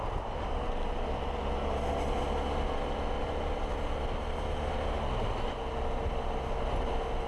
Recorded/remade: recorded